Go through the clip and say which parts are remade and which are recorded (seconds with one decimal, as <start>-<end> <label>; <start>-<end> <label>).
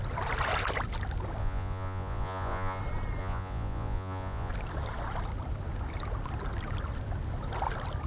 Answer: 0.0-1.4 recorded; 1.4-2.8 remade; 2.8-3.2 recorded; 3.2-4.5 remade; 4.5-8.1 recorded